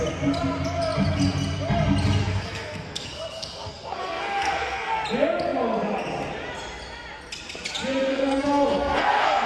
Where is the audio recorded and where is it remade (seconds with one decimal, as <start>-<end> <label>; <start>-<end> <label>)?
0.0-2.2 recorded; 2.2-4.9 remade; 4.9-8.1 recorded; 8.1-9.5 remade